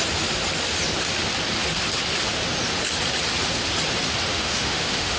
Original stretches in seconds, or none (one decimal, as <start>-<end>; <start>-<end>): 0.0-4.3